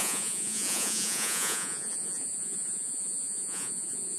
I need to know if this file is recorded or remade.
remade